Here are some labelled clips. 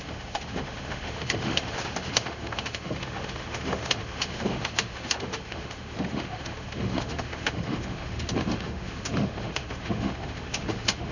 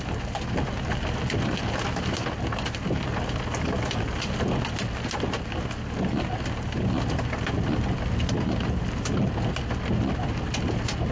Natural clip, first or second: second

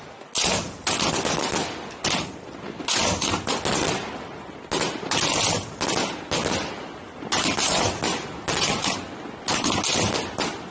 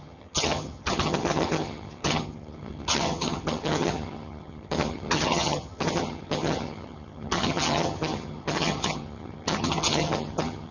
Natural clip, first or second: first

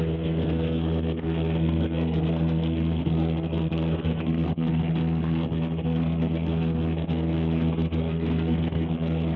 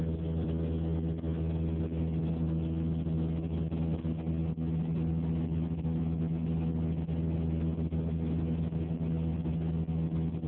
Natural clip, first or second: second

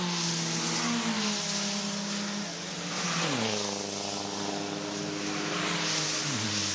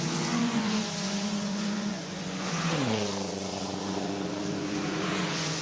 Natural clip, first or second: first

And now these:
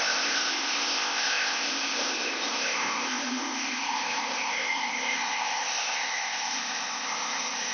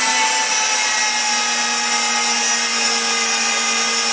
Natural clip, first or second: second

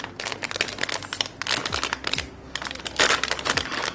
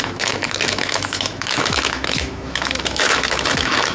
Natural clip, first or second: first